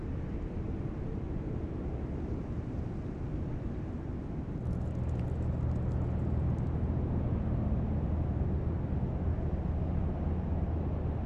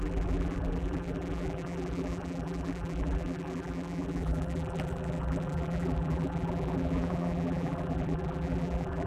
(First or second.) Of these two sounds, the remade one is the second